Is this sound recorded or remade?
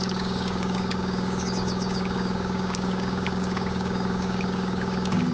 remade